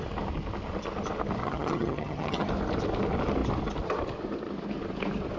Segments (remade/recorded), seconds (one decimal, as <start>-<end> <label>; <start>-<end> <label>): 0.0-1.4 recorded; 1.4-2.5 remade; 2.5-5.4 recorded